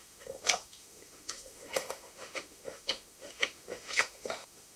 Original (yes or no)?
no